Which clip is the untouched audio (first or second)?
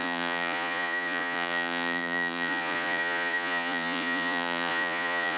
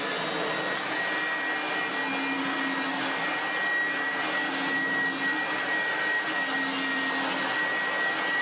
second